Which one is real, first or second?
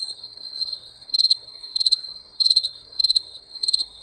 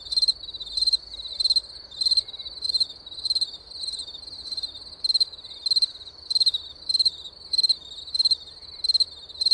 second